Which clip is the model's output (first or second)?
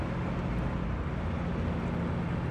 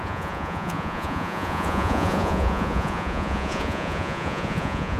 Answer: second